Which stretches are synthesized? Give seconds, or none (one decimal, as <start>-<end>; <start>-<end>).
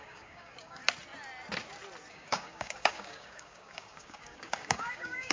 0.0-0.8; 2.1-5.3